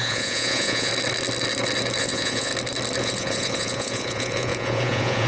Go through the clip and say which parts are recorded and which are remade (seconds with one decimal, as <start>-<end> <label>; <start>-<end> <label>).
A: 0.0-0.9 remade; 0.9-2.0 recorded; 2.0-2.5 remade; 2.5-3.0 recorded; 3.0-5.3 remade